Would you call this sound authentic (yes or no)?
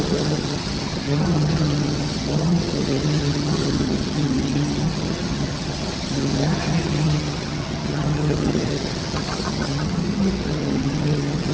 no